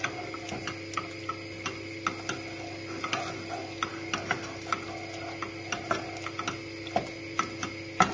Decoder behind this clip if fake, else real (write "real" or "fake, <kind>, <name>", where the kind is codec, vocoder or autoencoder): real